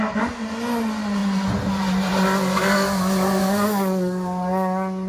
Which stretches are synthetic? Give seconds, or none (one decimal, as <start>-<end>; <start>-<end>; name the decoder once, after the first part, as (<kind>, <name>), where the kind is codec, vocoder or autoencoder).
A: 3.4-5.1 (codec, DAC)